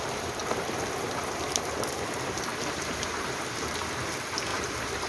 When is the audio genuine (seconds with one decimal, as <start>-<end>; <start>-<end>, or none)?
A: 0.4-1.1